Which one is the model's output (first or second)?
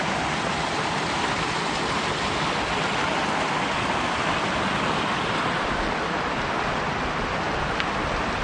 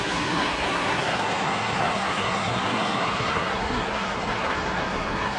second